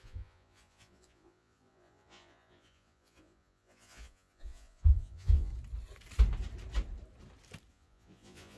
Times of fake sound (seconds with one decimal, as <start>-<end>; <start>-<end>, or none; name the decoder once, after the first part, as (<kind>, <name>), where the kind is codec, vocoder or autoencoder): 0.0-5.5 (vocoder, Vocos); 7.7-8.6